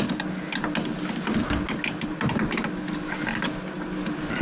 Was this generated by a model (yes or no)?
no